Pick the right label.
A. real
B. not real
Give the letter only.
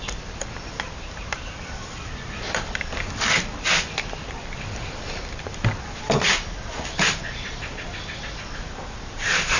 B